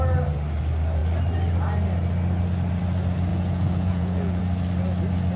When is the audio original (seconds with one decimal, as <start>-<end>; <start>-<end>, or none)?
0.0-3.3; 4.4-5.4